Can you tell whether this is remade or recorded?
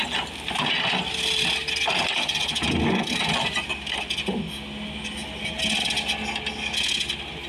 recorded